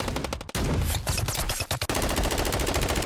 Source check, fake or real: real